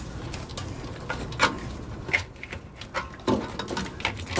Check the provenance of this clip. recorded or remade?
recorded